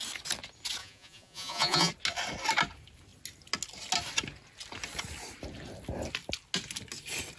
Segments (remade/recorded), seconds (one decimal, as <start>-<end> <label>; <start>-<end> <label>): 0.0-0.8 recorded; 0.8-1.9 remade; 1.9-7.4 recorded